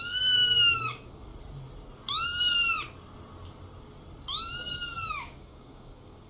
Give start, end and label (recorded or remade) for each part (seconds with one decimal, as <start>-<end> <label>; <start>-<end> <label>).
0.0-1.3 remade; 1.3-5.1 recorded; 5.1-6.3 remade